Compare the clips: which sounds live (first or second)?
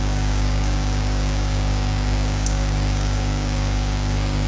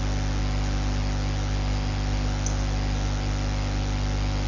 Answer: second